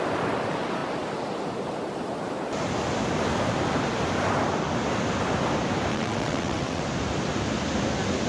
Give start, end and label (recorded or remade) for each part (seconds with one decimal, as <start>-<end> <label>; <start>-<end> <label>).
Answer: 0.0-5.9 recorded; 5.9-6.8 remade; 6.8-8.3 recorded